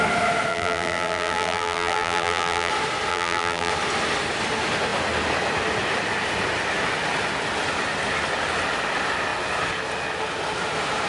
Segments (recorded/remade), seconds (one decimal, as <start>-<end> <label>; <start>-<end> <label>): 0.0-0.5 recorded; 0.5-2.7 remade; 2.7-3.1 recorded; 3.1-3.7 remade; 3.7-11.1 recorded